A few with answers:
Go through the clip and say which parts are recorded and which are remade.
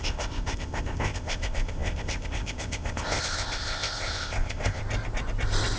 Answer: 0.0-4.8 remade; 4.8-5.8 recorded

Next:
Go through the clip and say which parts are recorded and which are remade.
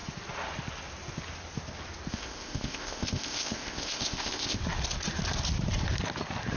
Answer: 0.0-2.1 recorded; 2.1-4.6 remade; 4.6-6.6 recorded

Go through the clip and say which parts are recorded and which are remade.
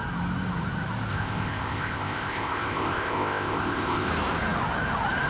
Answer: 0.0-1.1 recorded; 1.1-4.1 remade; 4.1-5.3 recorded